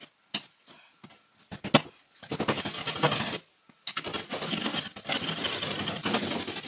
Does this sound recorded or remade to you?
recorded